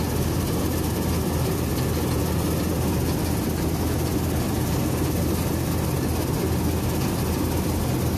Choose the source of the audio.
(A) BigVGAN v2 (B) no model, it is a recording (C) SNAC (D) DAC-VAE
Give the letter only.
B